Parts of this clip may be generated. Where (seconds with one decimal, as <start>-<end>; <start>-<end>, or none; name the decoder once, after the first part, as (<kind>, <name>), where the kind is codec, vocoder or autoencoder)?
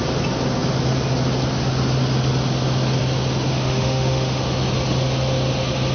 3.5-4.4 (autoencoder, DAC-VAE)